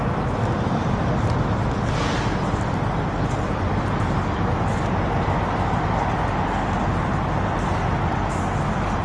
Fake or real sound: real